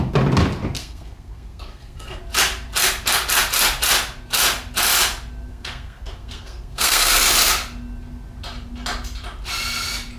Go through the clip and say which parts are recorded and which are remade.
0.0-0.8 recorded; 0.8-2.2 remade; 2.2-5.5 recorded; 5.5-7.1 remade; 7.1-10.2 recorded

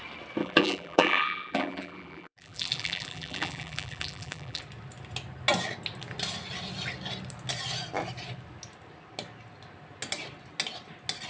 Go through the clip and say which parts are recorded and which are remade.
0.0-0.4 recorded; 0.4-4.6 remade; 4.6-11.3 recorded

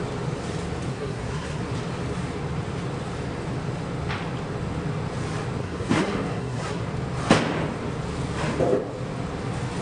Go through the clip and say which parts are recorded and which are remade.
0.0-0.9 recorded; 0.9-1.6 remade; 1.6-5.6 recorded; 5.6-6.8 remade; 6.8-9.8 recorded

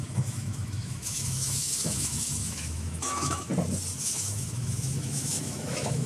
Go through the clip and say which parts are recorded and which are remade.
0.0-3.5 remade; 3.5-4.0 recorded; 4.0-6.1 remade